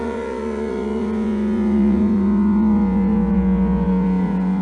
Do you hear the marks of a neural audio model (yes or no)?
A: yes